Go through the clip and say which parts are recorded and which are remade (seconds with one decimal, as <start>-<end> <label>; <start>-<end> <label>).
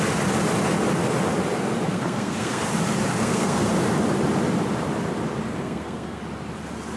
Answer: 0.0-1.9 recorded; 1.9-2.6 remade; 2.6-3.1 recorded; 3.1-3.7 remade; 3.7-5.5 recorded; 5.5-6.2 remade; 6.2-7.0 recorded